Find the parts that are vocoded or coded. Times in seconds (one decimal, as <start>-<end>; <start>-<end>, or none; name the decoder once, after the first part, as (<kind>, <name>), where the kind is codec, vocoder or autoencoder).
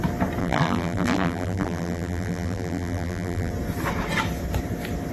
0.4-3.5 (vocoder, BigVGAN v2)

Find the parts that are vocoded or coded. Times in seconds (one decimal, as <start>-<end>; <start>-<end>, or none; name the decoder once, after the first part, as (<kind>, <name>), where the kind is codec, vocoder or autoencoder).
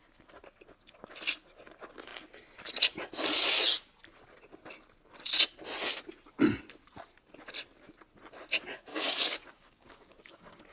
8.9-10.7 (codec, DAC)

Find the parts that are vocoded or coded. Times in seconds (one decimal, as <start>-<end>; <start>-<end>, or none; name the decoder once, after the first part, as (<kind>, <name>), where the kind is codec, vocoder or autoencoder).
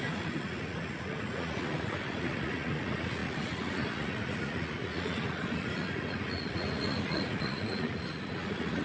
0.0-8.8 (vocoder, Vocos)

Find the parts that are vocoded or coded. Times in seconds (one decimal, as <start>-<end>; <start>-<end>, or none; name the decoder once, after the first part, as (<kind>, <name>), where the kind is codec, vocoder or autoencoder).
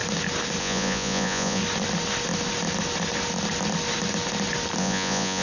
0.6-1.6 (vocoder, Vocos); 4.8-5.4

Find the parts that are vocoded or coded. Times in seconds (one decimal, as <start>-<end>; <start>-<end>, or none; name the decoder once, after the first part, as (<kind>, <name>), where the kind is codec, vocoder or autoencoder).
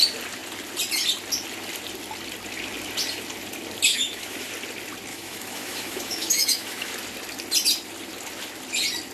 3.9-4.5 (autoencoder, DAC-VAE); 5.1-6.9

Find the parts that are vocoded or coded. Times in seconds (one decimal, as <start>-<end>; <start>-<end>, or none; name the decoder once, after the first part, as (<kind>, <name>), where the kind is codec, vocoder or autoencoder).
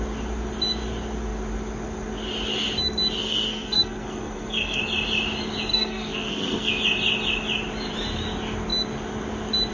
3.2-4.8 (codec, SNAC); 5.7-6.7